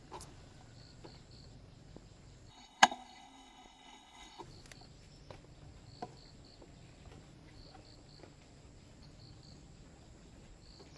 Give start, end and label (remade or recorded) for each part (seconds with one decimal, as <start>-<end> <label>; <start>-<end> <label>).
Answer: 0.0-2.5 recorded; 2.5-4.4 remade; 4.4-11.0 recorded